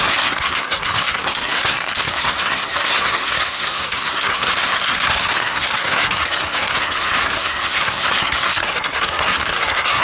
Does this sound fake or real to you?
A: fake